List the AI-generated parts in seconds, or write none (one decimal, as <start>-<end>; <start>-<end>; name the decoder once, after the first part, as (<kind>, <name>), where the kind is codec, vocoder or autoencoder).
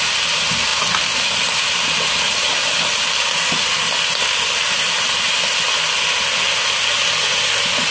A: none